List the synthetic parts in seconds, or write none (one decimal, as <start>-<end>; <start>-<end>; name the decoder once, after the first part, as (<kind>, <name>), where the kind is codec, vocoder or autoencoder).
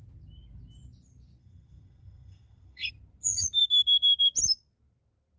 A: 1.4-2.9 (codec, SNAC)